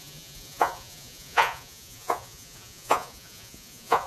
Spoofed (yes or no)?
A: yes